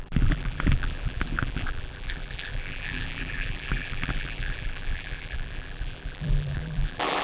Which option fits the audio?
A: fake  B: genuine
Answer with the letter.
A